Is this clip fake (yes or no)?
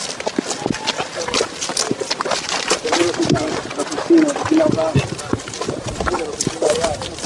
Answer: no